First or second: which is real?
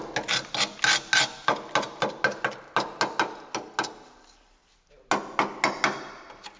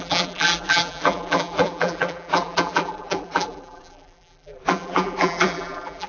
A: first